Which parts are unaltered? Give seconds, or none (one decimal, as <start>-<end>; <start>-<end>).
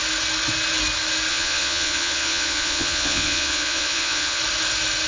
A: 0.0-1.3; 4.4-5.1